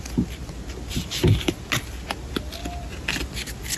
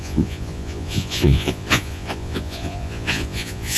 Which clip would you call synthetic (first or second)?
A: second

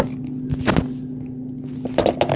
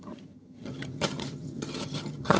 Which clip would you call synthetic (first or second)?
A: second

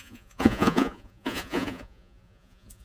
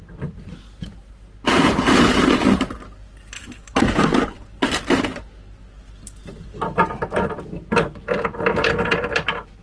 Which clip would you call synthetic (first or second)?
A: first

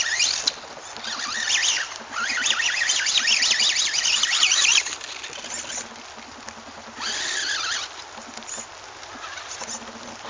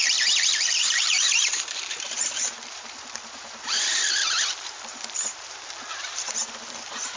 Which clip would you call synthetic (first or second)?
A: second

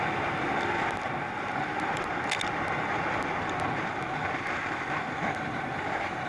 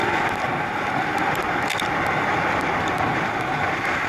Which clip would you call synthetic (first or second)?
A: second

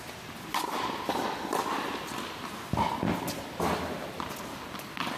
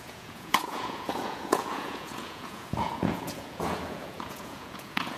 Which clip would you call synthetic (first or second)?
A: second